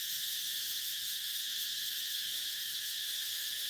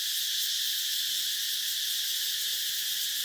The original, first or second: second